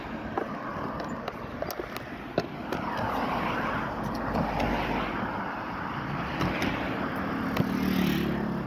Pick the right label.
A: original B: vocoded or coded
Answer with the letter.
A